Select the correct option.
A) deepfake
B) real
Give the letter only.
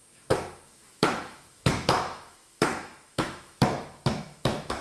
A